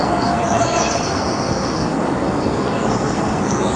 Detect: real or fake fake